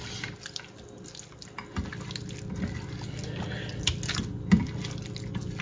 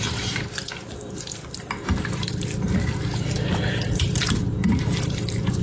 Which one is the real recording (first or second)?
first